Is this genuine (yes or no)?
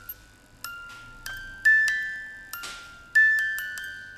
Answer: yes